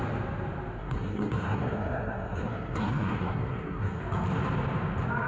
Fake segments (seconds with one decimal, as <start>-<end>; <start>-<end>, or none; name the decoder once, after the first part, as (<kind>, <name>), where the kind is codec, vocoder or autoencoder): 0.8-4.0 (codec, SNAC)